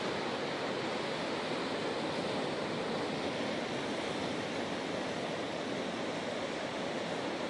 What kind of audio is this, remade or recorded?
recorded